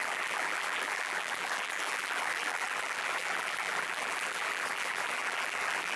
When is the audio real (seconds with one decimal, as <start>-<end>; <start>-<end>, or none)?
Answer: none